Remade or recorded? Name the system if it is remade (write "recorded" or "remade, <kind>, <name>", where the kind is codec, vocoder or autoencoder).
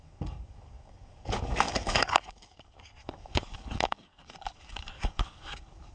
remade, codec, DAC